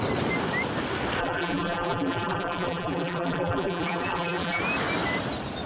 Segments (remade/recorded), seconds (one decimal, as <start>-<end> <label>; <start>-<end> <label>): 0.0-1.2 recorded; 1.2-4.6 remade; 4.6-5.7 recorded